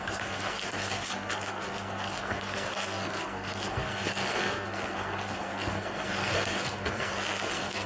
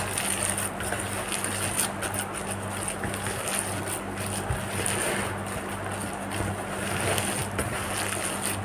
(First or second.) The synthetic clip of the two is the first